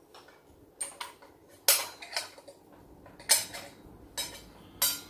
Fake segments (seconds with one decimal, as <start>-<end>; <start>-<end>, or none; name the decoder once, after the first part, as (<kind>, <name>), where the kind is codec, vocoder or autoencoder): none